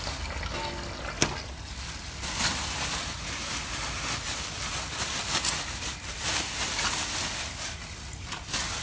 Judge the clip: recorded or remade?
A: recorded